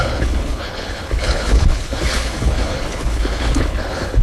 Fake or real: fake